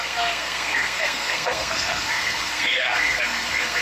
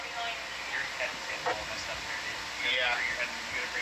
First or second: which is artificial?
first